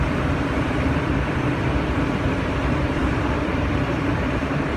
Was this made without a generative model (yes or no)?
no